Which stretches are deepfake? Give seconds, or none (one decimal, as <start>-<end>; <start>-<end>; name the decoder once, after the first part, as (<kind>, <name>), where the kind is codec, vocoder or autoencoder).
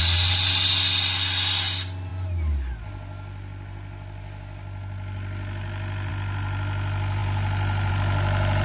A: 7.2-7.9 (vocoder, BigVGAN v2)